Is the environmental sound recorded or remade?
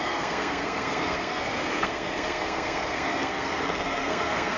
remade